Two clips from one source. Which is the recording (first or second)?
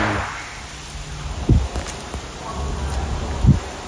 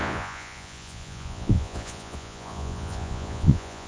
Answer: first